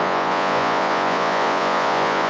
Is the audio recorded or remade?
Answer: remade